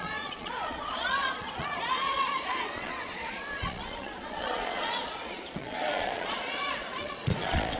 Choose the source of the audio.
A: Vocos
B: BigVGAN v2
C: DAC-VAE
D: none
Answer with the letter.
A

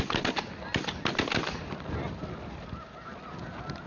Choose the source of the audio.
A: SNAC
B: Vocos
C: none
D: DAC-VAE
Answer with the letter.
C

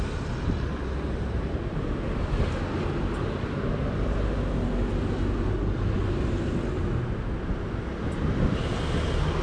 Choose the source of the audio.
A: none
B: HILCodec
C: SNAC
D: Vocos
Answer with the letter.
A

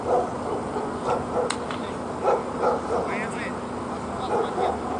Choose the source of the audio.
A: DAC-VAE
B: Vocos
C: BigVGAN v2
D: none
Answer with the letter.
D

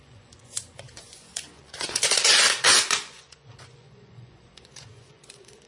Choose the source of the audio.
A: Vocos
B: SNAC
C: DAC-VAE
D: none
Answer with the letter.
A